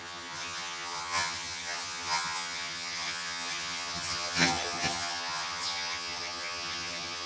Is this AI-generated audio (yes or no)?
yes